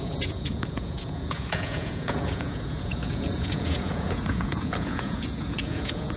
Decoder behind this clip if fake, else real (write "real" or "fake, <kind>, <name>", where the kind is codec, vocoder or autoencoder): fake, vocoder, Vocos